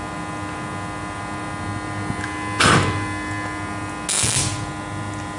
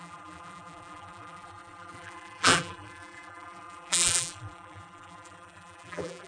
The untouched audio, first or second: first